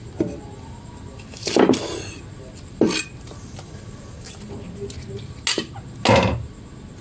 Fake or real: real